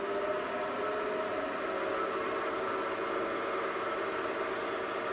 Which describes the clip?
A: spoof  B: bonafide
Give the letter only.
B